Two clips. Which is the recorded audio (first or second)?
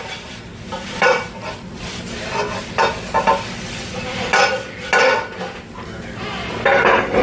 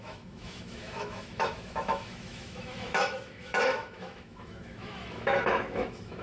first